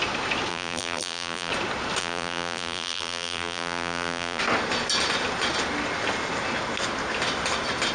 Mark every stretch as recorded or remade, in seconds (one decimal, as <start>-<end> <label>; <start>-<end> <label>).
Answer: 0.0-0.5 recorded; 0.5-1.5 remade; 1.5-2.0 recorded; 2.0-4.4 remade; 4.4-7.9 recorded